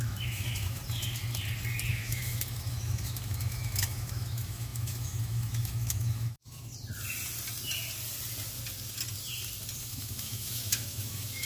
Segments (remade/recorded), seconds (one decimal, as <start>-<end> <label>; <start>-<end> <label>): 0.0-0.8 remade; 0.8-1.9 recorded; 1.9-6.7 remade; 6.7-9.8 recorded; 9.8-11.4 remade